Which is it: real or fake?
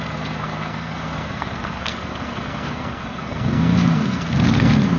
fake